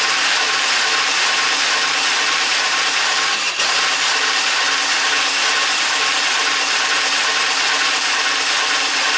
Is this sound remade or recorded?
recorded